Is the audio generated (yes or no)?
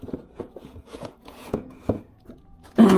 yes